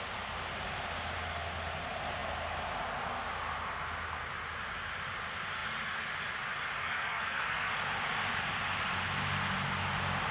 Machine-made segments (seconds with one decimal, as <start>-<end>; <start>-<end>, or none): 6.8-7.7